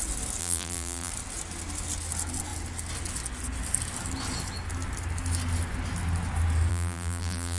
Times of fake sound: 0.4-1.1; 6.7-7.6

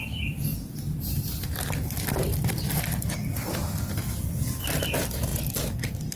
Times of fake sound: none